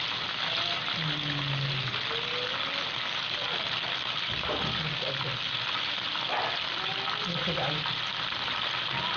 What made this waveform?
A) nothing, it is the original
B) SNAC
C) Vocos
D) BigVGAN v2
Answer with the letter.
A